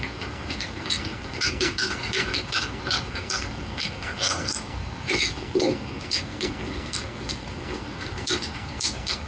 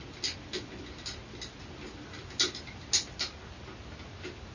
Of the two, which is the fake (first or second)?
first